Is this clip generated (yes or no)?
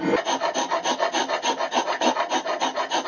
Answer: no